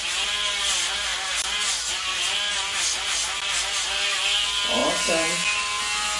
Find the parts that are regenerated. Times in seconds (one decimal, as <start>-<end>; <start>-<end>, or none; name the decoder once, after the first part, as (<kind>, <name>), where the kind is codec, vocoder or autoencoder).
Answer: none